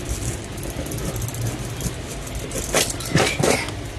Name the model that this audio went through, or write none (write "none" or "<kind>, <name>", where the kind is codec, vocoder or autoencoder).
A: none